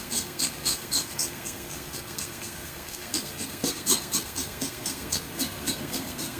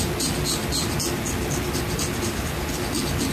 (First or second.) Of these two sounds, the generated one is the first